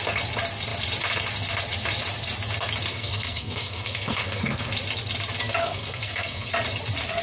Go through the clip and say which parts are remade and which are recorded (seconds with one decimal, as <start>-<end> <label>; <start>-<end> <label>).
0.0-2.9 recorded; 2.9-4.7 remade; 4.7-5.6 recorded; 5.6-6.5 remade; 6.5-7.2 recorded